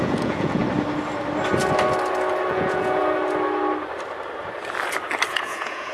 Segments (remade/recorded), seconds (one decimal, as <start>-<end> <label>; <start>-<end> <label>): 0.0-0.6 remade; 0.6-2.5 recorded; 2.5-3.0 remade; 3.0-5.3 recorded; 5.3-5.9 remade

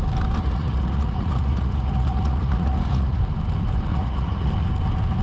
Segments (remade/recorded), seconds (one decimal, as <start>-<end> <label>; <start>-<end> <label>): 0.0-0.4 recorded; 0.4-3.2 remade; 3.2-3.9 recorded; 3.9-4.5 remade; 4.5-5.2 recorded

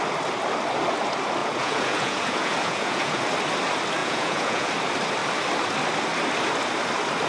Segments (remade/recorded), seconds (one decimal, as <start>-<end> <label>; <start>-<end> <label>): 0.0-1.4 recorded; 1.4-3.2 remade; 3.2-4.0 recorded; 4.0-4.7 remade; 4.7-7.3 recorded